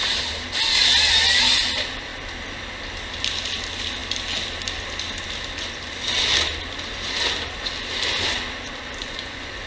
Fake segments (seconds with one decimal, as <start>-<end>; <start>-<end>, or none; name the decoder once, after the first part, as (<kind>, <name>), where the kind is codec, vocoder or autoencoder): 9.0-9.7 (vocoder, Vocos)